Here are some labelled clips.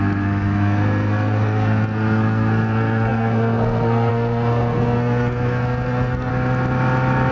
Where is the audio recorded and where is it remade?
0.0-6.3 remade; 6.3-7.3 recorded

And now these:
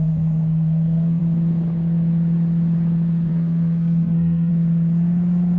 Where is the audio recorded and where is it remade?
0.0-1.2 remade; 1.2-3.3 recorded; 3.3-4.5 remade; 4.5-5.6 recorded

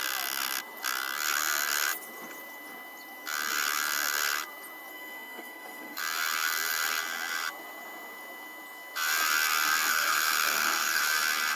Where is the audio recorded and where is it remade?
0.0-4.9 recorded; 4.9-6.0 remade; 6.0-9.9 recorded; 9.9-11.0 remade; 11.0-11.6 recorded

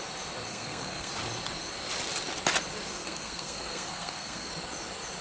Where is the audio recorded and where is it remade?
0.0-0.5 recorded; 0.5-1.1 remade; 1.1-2.9 recorded; 2.9-4.5 remade; 4.5-5.2 recorded